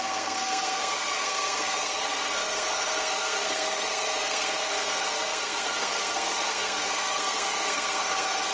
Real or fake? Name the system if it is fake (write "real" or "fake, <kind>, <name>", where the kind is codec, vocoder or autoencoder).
fake, codec, SNAC